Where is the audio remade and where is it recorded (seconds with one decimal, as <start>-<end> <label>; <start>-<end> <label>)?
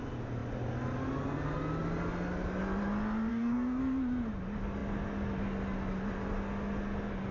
0.0-3.3 recorded; 3.3-3.8 remade; 3.8-7.3 recorded